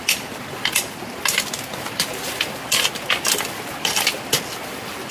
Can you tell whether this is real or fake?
real